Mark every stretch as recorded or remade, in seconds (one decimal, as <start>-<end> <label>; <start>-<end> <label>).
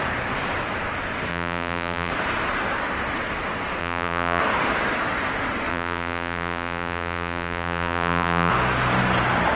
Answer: 0.0-1.3 recorded; 1.3-2.1 remade; 2.1-3.8 recorded; 3.8-4.4 remade; 4.4-5.7 recorded; 5.7-8.5 remade; 8.5-9.6 recorded